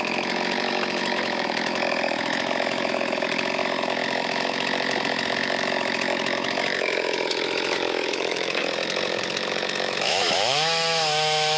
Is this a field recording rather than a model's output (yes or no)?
no